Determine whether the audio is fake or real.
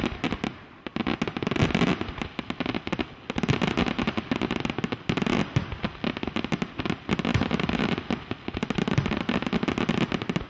real